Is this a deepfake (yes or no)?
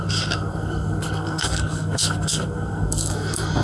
yes